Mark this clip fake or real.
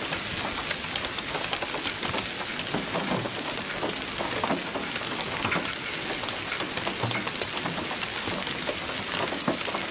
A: real